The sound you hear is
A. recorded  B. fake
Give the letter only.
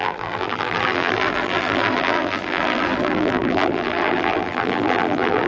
B